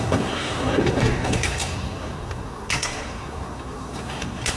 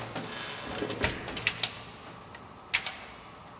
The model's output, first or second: first